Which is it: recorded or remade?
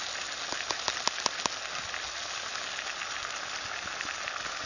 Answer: recorded